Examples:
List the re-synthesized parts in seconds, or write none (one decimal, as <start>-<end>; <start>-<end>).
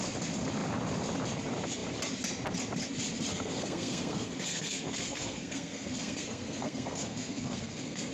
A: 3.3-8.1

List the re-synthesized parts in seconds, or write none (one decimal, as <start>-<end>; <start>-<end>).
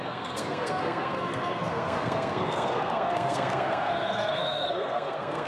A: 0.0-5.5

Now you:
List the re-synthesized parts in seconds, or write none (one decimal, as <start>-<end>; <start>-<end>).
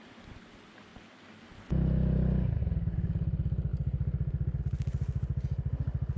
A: none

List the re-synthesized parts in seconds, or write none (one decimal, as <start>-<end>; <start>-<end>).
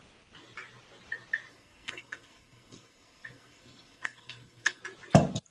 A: 1.5-4.8